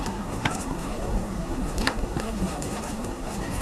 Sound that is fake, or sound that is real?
fake